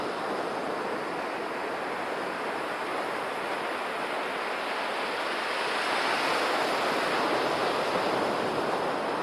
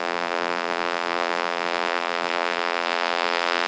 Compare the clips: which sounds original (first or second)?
first